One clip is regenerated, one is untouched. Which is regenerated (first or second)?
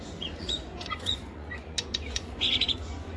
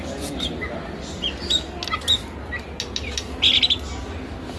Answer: first